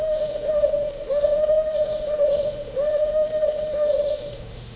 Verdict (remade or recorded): remade